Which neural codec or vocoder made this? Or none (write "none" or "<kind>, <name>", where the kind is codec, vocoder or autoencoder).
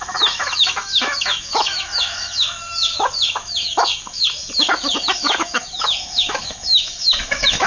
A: autoencoder, DAC-VAE